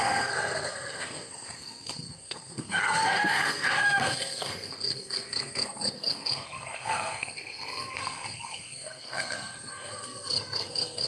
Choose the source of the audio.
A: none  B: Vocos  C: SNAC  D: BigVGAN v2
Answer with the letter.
C